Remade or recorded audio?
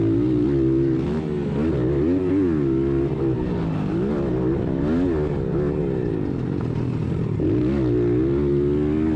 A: recorded